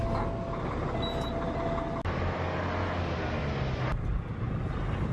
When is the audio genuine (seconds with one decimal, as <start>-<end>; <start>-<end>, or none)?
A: 0.0-5.1